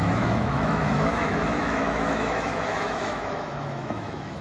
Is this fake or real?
fake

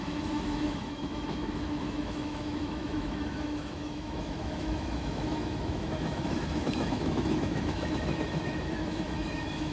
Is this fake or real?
fake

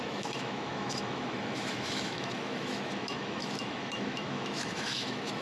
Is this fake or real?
fake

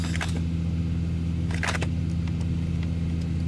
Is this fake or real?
real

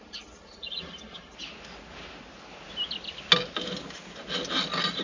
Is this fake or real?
real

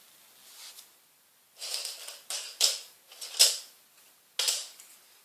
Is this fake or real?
real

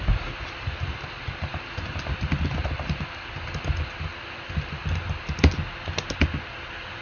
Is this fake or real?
real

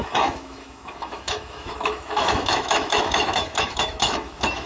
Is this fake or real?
fake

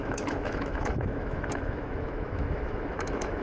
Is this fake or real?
fake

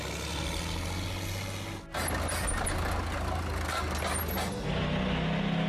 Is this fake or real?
real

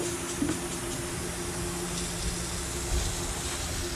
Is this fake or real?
real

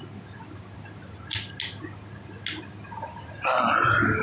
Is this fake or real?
real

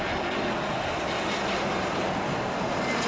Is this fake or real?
real